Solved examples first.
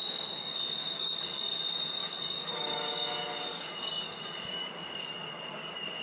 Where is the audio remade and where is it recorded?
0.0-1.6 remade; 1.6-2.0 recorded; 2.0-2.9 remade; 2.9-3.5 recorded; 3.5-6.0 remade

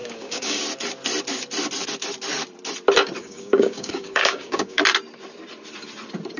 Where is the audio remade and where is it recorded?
0.0-0.6 remade; 0.6-3.2 recorded; 3.2-4.8 remade; 4.8-6.4 recorded

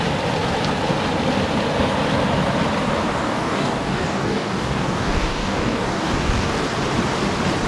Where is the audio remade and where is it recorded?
0.0-3.1 recorded; 3.1-6.6 remade; 6.6-7.7 recorded

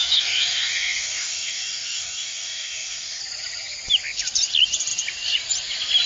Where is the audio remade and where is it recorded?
0.0-3.2 remade; 3.2-6.1 recorded